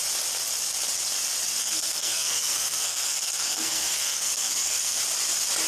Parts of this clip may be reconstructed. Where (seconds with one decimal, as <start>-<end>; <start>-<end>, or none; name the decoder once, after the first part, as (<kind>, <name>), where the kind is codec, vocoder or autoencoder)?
1.6-5.0 (codec, SNAC)